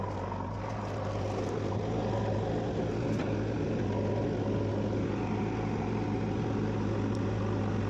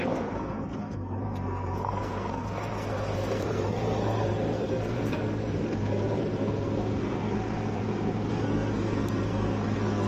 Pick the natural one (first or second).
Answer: first